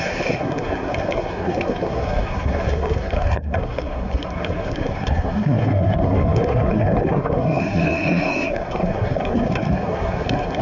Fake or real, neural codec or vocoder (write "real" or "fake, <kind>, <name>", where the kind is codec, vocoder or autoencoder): fake, codec, SNAC